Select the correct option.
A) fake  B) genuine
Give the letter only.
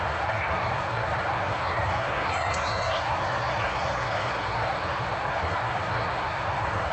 A